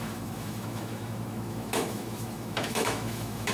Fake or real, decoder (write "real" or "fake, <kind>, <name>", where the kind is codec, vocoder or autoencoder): fake, autoencoder, DAC-VAE